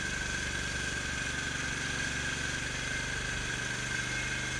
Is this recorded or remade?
recorded